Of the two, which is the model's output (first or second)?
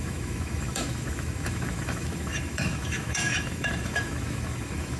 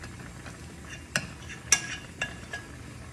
first